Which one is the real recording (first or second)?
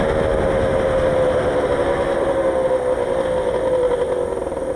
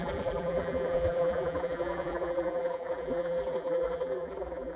first